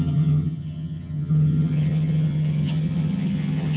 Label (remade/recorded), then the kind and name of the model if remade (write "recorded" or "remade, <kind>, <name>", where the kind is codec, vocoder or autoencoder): remade, vocoder, HiFi-GAN